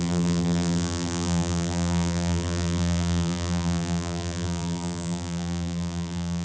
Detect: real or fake fake